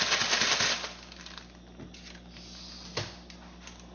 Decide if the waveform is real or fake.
real